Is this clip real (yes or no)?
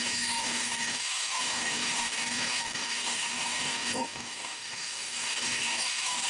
no